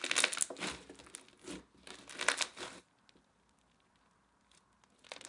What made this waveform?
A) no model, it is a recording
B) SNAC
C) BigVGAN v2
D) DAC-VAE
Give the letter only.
A